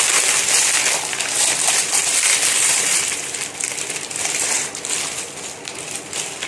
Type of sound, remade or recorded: remade